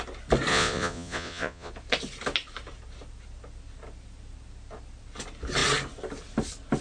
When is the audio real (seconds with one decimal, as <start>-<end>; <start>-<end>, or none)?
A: 0.0-0.5; 1.7-6.8